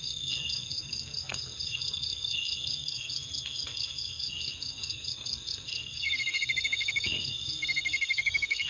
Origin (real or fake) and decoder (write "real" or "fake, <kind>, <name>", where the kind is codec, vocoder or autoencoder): fake, codec, SNAC